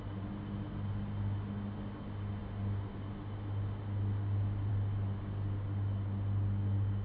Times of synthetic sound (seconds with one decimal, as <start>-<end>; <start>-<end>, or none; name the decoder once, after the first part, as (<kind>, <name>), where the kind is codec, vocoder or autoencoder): none